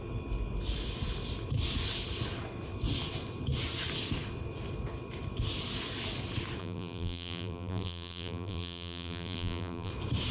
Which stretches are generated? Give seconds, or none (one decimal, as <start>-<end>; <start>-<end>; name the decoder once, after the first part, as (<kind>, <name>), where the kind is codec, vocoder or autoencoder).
6.6-9.9 (vocoder, BigVGAN v2)